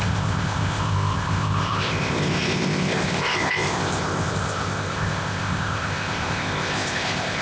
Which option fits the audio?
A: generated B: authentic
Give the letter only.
A